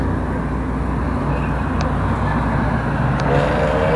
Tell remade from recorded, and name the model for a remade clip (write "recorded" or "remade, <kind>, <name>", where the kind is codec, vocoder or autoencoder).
recorded